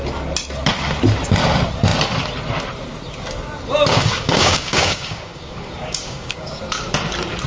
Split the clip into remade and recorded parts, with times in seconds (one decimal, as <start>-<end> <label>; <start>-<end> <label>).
0.0-3.9 recorded; 3.9-6.6 remade; 6.6-7.5 recorded